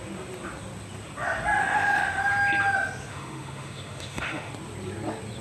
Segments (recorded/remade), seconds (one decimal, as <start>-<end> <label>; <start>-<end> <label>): 0.0-1.6 recorded; 1.6-2.2 remade; 2.2-3.1 recorded; 3.1-4.5 remade; 4.5-5.4 recorded